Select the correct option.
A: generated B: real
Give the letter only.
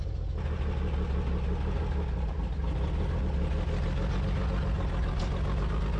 B